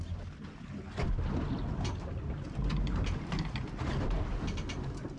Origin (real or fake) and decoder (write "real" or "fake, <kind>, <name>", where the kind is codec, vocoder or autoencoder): real